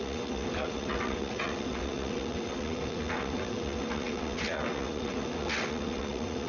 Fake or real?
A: fake